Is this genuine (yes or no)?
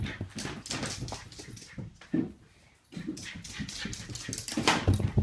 yes